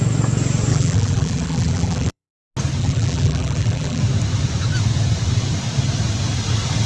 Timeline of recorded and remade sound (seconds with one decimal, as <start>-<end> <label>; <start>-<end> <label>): 0.0-0.7 recorded; 0.7-2.3 remade; 2.3-2.8 recorded; 2.8-4.0 remade; 4.0-6.9 recorded